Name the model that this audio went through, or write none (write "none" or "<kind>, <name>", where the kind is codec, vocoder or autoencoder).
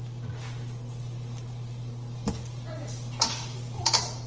none